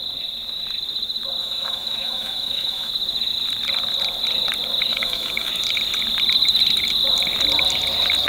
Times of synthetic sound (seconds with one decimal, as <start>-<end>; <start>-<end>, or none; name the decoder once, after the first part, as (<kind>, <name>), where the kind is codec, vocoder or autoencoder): 1.4-2.9 (autoencoder, DAC-VAE); 4.9-5.5